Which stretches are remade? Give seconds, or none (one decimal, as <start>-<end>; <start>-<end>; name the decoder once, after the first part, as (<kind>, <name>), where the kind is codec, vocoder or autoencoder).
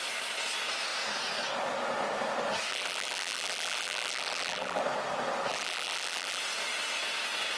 2.7-4.8 (vocoder, BigVGAN v2); 5.5-6.4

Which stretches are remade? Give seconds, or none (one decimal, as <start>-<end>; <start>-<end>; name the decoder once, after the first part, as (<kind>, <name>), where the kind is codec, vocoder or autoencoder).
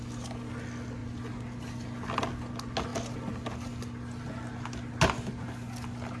none